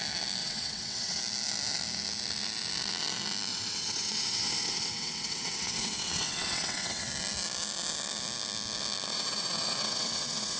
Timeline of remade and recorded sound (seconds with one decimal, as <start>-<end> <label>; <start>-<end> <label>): 0.0-0.4 recorded; 0.4-1.2 remade; 1.2-3.5 recorded; 3.5-7.1 remade; 7.1-9.1 recorded; 9.1-10.6 remade